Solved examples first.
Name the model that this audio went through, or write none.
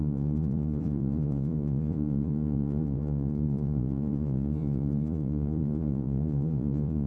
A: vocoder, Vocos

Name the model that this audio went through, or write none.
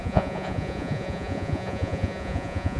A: vocoder, Vocos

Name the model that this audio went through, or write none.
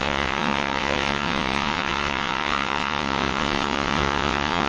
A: vocoder, WaveNeXt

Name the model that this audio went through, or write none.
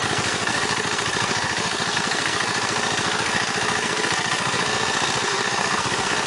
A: codec, SNAC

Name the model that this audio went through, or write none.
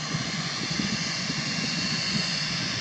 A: vocoder, Vocos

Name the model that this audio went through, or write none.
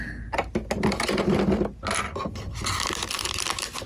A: none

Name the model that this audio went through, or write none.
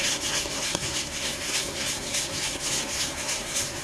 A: codec, SNAC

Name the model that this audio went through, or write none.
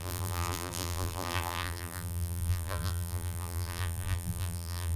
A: vocoder, BigVGAN v2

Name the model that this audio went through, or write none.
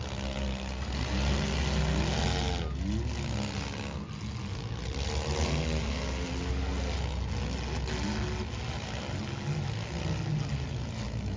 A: none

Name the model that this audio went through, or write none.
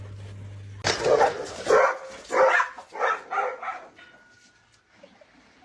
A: none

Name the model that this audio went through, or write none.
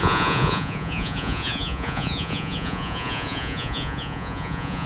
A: vocoder, Vocos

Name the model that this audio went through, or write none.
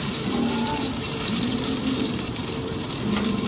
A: vocoder, BigVGAN v2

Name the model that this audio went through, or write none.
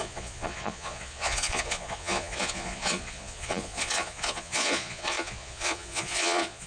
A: vocoder, Vocos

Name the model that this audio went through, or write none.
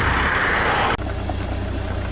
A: none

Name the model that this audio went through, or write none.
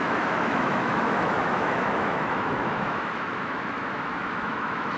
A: autoencoder, DAC-VAE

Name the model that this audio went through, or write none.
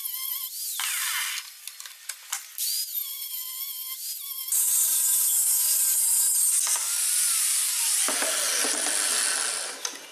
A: none